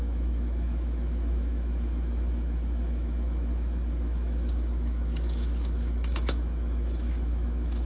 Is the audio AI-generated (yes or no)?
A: yes